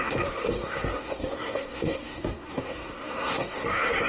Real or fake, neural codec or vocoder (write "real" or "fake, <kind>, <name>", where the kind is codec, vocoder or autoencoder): fake, codec, SNAC